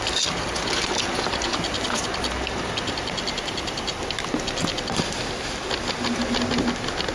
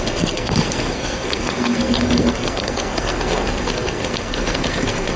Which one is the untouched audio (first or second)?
first